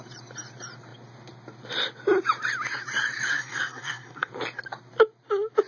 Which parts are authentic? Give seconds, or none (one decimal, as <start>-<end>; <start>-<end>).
0.0-3.3; 4.3-5.7